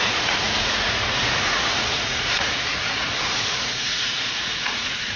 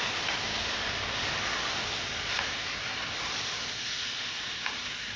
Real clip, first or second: second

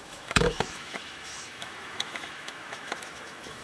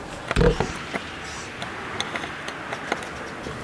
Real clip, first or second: second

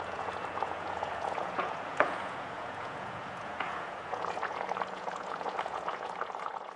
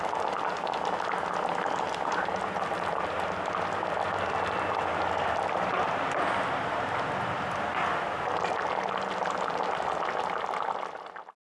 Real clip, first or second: second